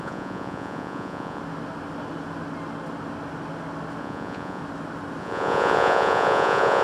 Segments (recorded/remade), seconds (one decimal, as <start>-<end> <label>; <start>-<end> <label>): 0.0-1.4 remade; 1.4-4.0 recorded; 4.0-4.6 remade; 4.6-5.2 recorded; 5.2-6.8 remade